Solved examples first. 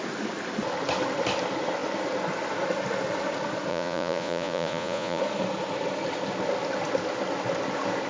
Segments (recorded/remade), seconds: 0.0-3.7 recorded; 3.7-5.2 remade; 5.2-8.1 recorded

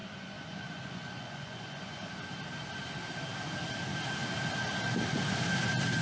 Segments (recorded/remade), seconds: 0.0-2.1 remade; 2.1-6.0 recorded